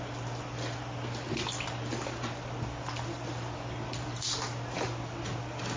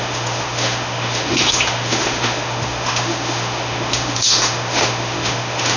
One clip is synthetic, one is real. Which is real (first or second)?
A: first